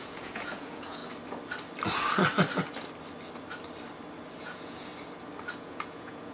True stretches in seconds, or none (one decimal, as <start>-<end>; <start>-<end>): 1.0-4.4; 4.9-5.5